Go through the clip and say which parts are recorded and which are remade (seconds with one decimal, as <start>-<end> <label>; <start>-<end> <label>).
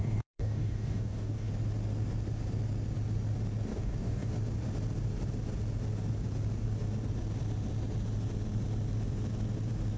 0.0-1.5 remade; 1.5-3.7 recorded; 3.7-4.3 remade; 4.3-10.0 recorded